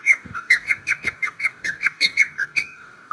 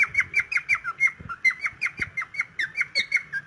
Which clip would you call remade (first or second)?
first